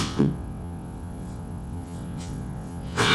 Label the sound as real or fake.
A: fake